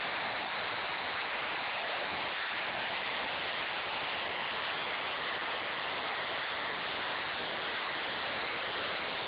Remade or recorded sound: recorded